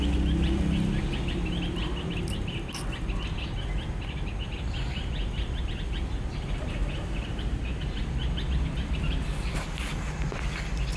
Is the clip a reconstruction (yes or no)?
no